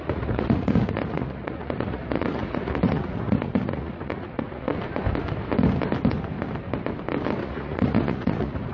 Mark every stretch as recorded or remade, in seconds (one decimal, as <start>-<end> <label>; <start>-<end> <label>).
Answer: 0.0-4.7 remade; 4.7-7.4 recorded; 7.4-8.7 remade